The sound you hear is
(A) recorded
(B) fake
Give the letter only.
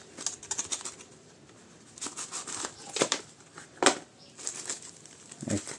A